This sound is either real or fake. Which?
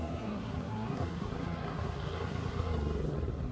fake